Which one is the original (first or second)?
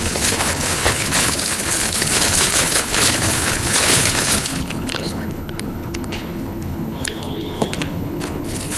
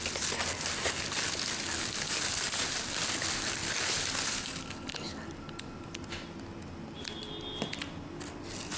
second